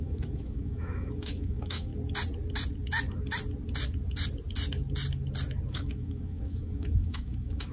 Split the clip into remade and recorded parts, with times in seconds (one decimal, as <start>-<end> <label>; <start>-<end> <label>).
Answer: 0.0-1.9 remade; 1.9-5.7 recorded; 5.7-7.7 remade

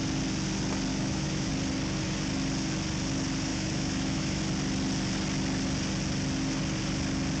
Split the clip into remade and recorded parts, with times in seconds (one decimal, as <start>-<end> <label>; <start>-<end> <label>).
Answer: 0.0-0.9 recorded; 0.9-1.5 remade; 1.5-3.5 recorded; 3.5-4.4 remade; 4.4-7.4 recorded

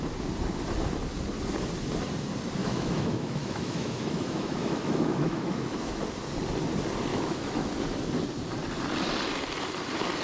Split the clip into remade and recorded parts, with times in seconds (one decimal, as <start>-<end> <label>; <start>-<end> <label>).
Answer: 0.0-2.6 recorded; 2.6-6.0 remade; 6.0-7.1 recorded; 7.1-7.7 remade; 7.7-10.2 recorded

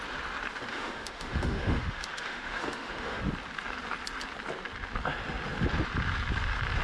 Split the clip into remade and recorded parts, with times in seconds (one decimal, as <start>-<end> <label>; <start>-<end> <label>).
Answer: 0.0-0.7 recorded; 0.7-3.2 remade; 3.2-6.8 recorded

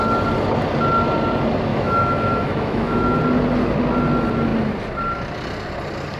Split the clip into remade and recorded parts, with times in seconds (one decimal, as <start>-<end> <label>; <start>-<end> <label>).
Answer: 0.0-1.7 recorded; 1.7-3.2 remade; 3.2-6.2 recorded

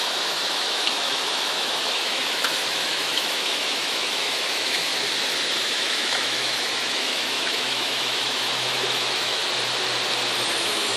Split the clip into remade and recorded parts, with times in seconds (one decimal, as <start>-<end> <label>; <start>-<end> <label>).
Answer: 0.0-4.9 remade; 4.9-5.6 recorded; 5.6-9.4 remade; 9.4-10.6 recorded; 10.6-11.0 remade

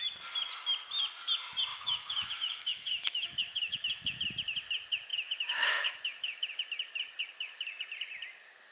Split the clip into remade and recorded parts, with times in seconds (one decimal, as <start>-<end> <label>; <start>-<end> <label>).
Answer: 0.0-1.7 recorded; 1.7-4.2 remade; 4.2-5.1 recorded; 5.1-6.5 remade; 6.5-8.7 recorded